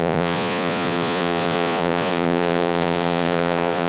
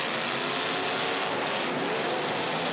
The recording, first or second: second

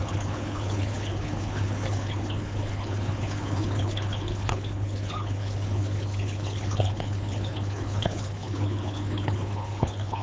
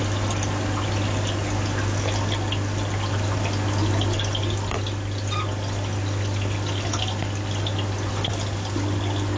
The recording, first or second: second